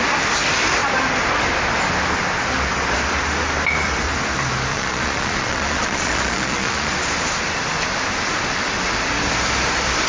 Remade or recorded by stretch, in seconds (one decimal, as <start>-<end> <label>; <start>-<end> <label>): 0.0-4.7 recorded; 4.7-6.9 remade; 6.9-10.1 recorded